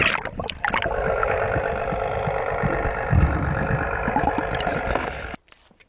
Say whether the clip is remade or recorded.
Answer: recorded